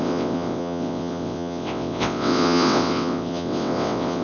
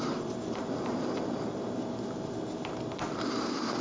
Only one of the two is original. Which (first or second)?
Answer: second